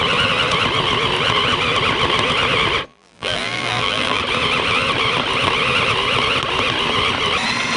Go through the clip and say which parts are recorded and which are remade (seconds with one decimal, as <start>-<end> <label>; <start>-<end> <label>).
0.0-2.9 recorded; 2.9-4.2 remade; 4.2-7.8 recorded